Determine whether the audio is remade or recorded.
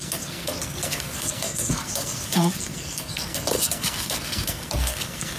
remade